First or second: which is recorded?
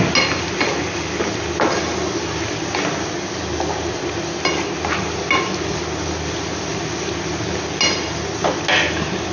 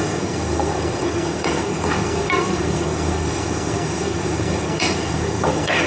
first